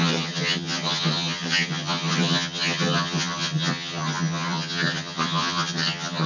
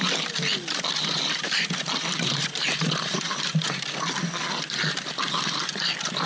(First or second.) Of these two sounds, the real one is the second